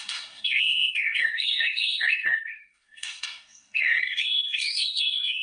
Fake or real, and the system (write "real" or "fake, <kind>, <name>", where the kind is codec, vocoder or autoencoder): fake, codec, SNAC